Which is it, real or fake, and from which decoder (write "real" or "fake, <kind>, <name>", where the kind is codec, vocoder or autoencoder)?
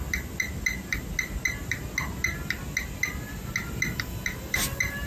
real